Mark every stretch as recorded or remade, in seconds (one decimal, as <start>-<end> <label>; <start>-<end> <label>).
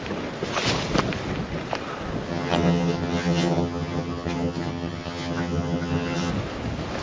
0.0-2.3 recorded; 2.3-6.3 remade; 6.3-7.0 recorded